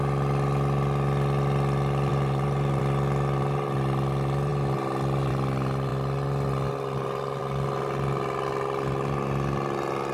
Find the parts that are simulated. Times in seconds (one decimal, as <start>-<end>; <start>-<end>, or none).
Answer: 2.1-2.8